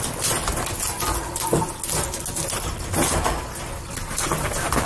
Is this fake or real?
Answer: real